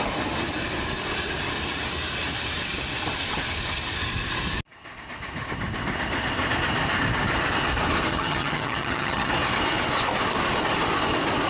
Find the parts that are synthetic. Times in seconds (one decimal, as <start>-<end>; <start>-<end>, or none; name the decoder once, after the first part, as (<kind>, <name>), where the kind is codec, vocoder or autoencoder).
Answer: 8.1-9.3 (vocoder, HiFi-GAN)